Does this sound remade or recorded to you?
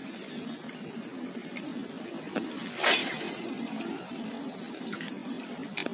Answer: recorded